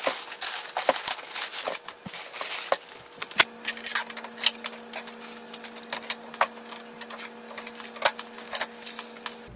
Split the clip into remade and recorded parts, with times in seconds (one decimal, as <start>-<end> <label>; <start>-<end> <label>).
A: 0.0-9.6 recorded